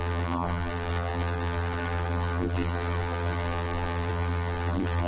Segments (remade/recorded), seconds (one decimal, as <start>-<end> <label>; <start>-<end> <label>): 0.0-5.1 remade